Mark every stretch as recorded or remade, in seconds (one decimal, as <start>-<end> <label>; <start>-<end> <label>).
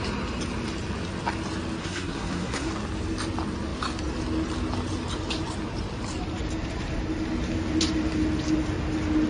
0.0-1.8 recorded; 1.8-2.7 remade; 2.7-9.3 recorded